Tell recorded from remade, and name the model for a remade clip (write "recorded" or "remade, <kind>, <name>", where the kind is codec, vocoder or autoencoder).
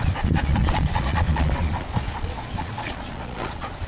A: remade, vocoder, Vocos